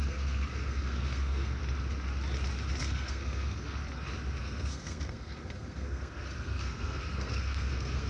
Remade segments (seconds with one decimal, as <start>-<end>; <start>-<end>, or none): 0.0-1.6; 2.8-3.8; 4.4-8.1